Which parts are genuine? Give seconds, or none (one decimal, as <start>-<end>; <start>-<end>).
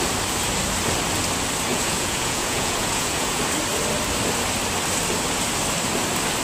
0.0-1.7; 3.4-6.4